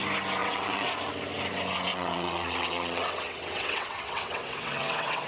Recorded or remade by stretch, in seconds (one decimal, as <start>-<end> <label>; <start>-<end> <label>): 0.0-0.4 recorded; 0.4-0.9 remade; 0.9-1.9 recorded; 1.9-5.3 remade